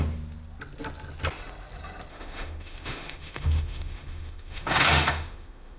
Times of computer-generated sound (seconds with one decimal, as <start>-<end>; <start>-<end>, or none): 2.1-5.8